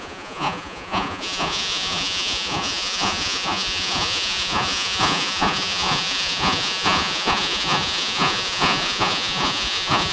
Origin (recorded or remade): remade